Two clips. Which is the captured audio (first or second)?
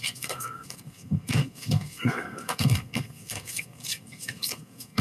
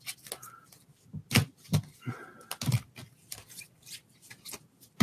second